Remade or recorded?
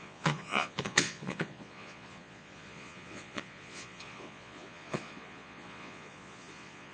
remade